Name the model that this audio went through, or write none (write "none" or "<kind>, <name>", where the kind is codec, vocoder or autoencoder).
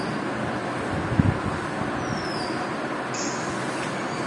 none